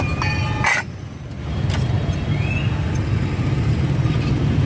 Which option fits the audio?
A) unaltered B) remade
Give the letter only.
A